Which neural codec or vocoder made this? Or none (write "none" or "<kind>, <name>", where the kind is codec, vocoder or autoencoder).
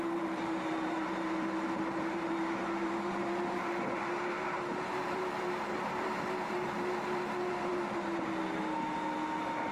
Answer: vocoder, BigVGAN v2